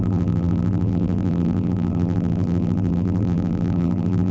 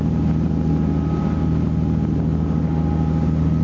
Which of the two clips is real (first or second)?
second